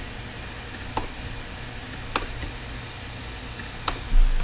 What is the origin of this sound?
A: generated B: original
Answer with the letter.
B